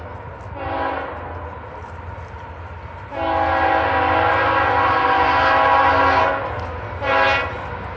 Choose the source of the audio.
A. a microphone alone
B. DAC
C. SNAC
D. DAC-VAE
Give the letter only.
A